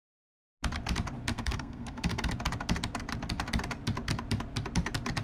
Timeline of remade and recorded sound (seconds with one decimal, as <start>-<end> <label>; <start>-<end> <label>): 0.0-1.3 recorded; 1.3-2.3 remade; 2.3-5.2 recorded